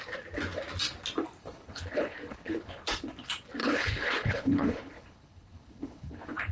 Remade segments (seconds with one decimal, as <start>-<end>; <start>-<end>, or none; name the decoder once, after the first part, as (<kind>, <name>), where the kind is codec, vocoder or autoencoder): 1.4-2.8 (codec, HILCodec); 3.6-6.5